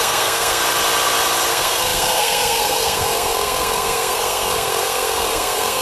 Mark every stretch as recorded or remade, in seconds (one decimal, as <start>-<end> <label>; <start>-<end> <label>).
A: 0.0-0.6 remade; 0.6-1.5 recorded; 1.5-5.8 remade